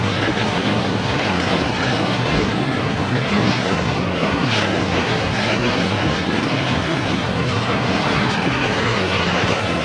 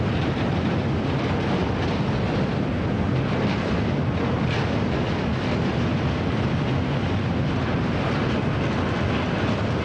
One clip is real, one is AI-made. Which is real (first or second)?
second